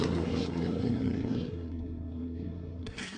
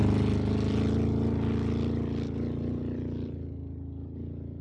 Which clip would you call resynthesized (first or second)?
first